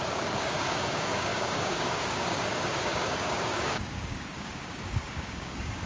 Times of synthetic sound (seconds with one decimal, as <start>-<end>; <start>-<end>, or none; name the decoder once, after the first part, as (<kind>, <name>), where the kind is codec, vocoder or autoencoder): 0.0-5.9 (codec, DAC)